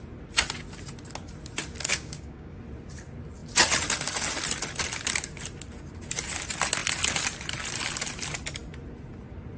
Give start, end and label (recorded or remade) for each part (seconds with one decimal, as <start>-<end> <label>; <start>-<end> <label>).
0.0-1.9 recorded; 1.9-2.6 remade; 2.6-9.6 recorded

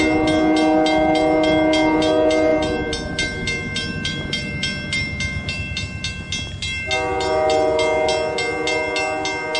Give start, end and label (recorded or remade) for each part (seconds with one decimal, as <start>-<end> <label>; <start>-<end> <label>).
0.0-9.6 recorded

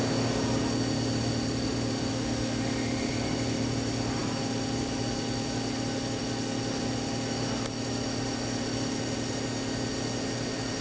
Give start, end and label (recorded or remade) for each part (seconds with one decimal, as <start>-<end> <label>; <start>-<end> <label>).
0.0-2.1 recorded; 2.1-3.1 remade; 3.1-10.8 recorded

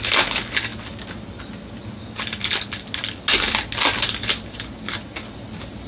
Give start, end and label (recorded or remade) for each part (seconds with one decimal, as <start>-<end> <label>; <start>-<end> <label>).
0.0-5.9 recorded